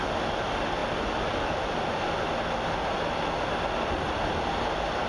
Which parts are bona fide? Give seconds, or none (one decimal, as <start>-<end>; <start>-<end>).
0.0-5.1